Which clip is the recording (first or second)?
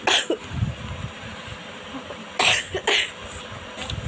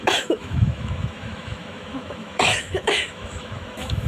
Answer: first